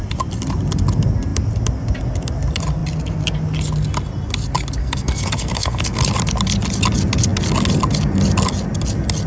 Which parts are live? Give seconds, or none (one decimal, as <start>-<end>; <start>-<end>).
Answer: 0.0-4.8; 6.0-9.3